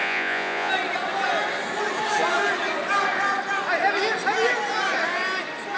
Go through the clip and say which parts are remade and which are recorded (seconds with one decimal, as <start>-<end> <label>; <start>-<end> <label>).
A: 0.0-0.7 remade; 0.7-5.8 recorded